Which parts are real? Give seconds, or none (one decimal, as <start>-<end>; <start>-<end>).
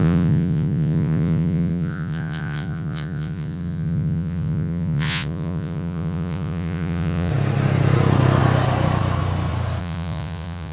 7.3-9.8